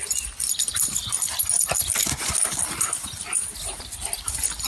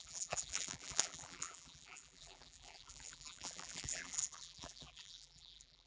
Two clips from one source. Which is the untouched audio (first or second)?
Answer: first